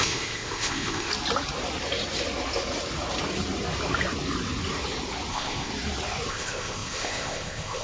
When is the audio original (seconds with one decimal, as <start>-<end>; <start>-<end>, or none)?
1.1-5.3; 5.7-6.3